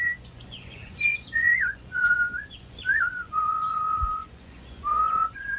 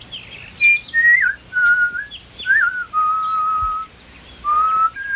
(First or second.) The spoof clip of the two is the first